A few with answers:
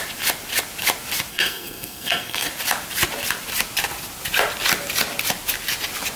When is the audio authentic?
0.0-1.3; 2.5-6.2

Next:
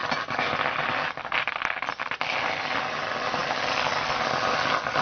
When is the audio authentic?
0.0-5.0

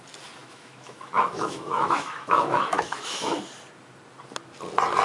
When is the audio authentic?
0.0-0.4; 3.4-5.0

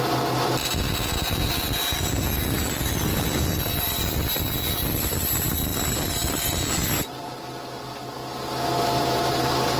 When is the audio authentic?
0.0-2.6; 4.3-5.7; 6.5-9.8

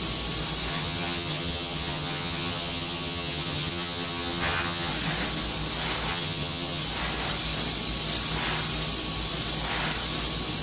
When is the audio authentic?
0.0-0.7; 4.9-6.1; 6.8-10.6

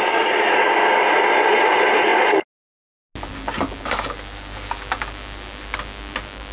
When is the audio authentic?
0.0-6.5

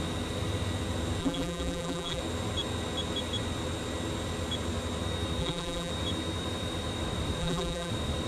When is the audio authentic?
0.0-1.2; 2.2-5.4; 5.9-7.4; 7.9-8.3

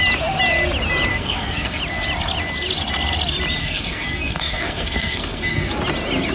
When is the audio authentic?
0.0-1.1; 1.8-3.6; 5.7-6.3